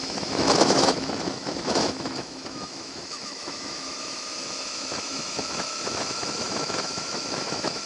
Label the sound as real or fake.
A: fake